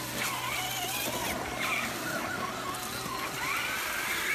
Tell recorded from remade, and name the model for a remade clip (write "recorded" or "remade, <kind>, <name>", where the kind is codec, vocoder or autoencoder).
recorded